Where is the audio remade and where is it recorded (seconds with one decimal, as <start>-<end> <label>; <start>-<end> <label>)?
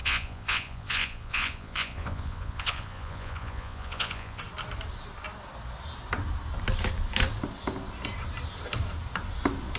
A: 0.0-4.4 remade; 4.4-9.8 recorded